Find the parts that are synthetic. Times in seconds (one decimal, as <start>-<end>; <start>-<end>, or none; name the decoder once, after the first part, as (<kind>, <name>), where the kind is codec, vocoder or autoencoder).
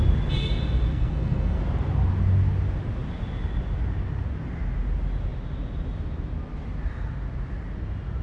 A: 0.9-1.6 (codec, SNAC)